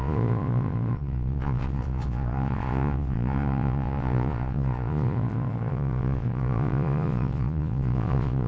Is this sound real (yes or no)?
no